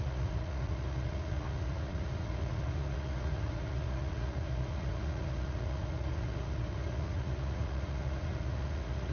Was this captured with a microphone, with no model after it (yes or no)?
no